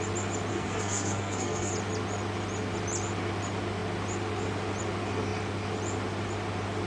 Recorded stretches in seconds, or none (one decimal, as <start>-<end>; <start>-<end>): 0.0-0.5; 1.7-6.9